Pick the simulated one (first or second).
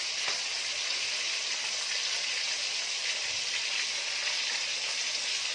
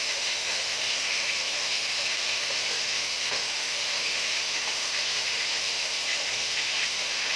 second